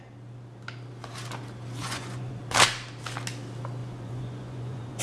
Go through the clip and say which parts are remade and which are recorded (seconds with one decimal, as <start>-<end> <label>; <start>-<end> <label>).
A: 0.0-1.8 recorded; 1.8-2.4 remade; 2.4-3.8 recorded; 3.8-5.0 remade